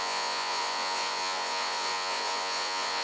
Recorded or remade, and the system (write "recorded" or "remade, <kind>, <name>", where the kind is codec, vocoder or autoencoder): remade, vocoder, Vocos